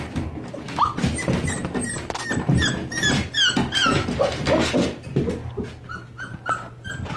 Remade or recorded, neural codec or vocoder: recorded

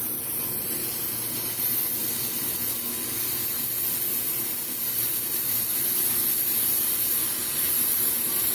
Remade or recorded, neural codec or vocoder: recorded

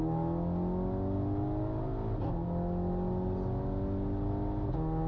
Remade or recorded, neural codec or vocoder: recorded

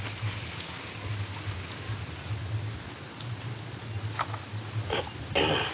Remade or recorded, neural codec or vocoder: recorded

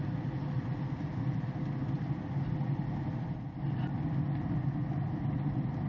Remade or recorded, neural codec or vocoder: recorded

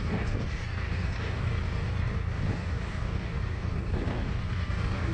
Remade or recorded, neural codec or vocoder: remade, codec, DAC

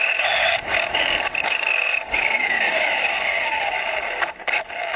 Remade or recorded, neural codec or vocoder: remade, codec, DAC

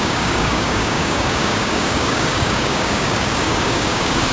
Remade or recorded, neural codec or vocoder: remade, codec, DAC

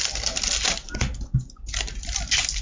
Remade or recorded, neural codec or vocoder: recorded